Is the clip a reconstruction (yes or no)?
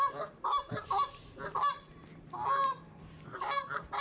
yes